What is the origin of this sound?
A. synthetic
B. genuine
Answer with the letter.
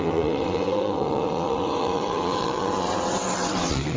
A